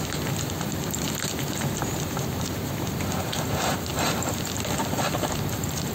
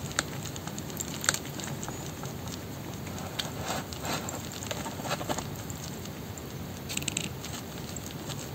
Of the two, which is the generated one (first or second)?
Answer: first